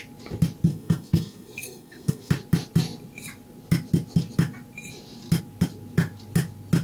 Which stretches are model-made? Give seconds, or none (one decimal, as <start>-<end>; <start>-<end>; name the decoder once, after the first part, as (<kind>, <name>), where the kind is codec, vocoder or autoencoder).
0.7-2.3 (codec, SNAC)